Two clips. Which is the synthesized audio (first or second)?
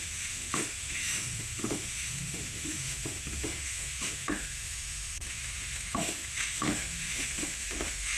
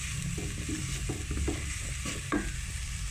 first